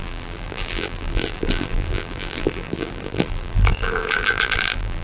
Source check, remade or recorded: remade